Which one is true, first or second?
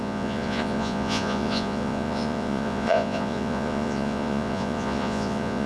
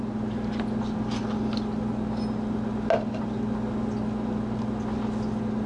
second